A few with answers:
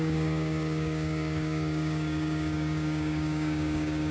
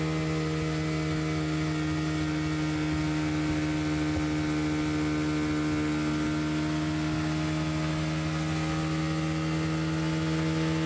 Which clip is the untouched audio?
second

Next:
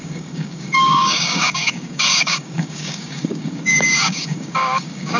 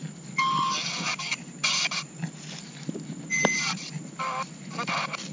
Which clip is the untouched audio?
second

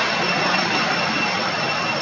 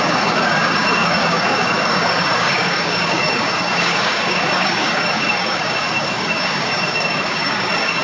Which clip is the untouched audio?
first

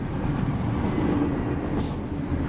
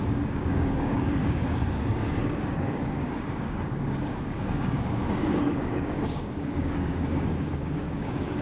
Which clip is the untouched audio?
first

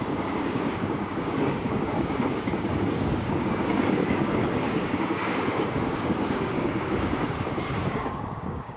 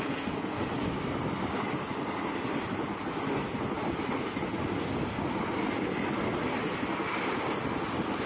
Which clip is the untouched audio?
second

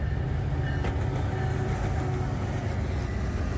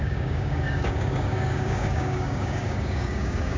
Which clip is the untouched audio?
first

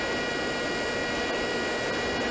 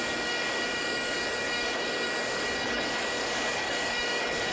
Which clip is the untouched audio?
first